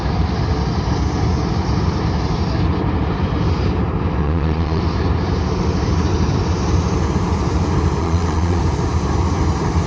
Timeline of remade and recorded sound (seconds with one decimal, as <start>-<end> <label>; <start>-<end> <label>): 0.0-4.2 recorded; 4.2-4.8 remade; 4.8-8.0 recorded; 8.0-8.6 remade; 8.6-9.9 recorded